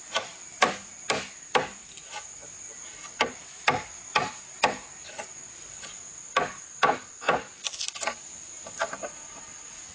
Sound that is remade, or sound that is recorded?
recorded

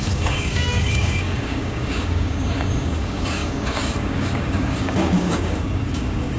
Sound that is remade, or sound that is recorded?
remade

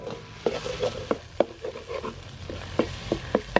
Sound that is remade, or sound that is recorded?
recorded